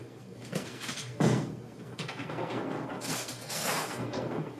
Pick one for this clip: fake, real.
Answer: fake